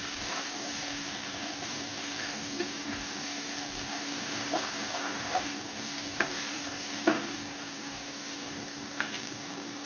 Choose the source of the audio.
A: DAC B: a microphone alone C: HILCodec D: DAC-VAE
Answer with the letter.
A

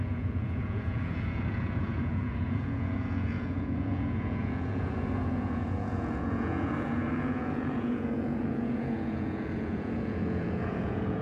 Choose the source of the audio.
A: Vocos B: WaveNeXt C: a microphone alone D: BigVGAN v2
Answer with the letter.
A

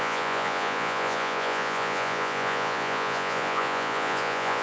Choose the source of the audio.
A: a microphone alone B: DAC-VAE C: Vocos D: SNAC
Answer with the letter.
C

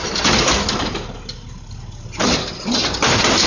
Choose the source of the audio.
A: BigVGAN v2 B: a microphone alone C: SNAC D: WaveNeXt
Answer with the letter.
B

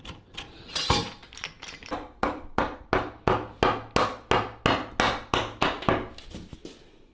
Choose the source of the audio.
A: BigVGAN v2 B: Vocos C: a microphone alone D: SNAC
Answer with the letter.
C